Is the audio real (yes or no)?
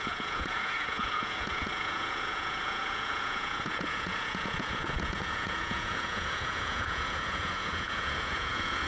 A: no